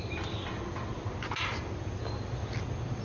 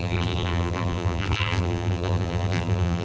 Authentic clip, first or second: first